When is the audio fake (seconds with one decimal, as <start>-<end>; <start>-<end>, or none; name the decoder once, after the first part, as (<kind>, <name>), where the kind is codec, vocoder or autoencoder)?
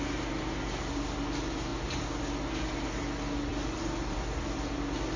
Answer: 3.5-5.2 (vocoder, BigVGAN v2)